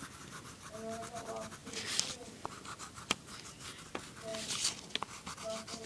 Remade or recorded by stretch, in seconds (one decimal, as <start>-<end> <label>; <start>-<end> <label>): 0.0-5.9 recorded